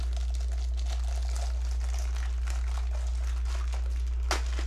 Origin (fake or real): real